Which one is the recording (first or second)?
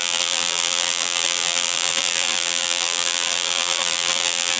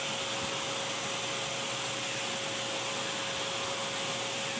second